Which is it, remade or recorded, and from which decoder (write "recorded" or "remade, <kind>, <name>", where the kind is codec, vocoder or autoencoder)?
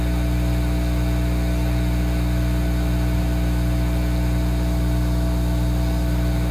remade, vocoder, BigVGAN v2